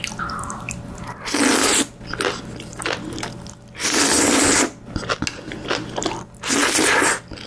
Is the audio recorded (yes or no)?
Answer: yes